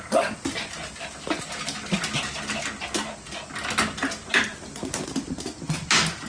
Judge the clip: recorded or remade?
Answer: recorded